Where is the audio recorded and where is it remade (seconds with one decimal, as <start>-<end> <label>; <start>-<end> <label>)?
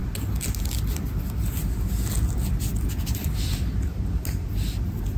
0.0-5.2 recorded